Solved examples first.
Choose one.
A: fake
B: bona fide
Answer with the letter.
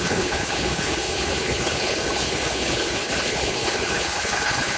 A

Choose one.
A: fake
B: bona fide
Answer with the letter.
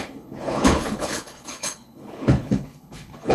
A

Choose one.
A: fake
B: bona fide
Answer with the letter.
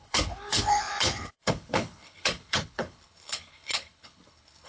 A